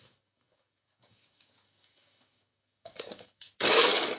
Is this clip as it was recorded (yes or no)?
no